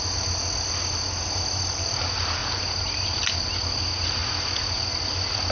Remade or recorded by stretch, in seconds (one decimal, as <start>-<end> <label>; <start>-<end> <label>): 0.0-5.5 recorded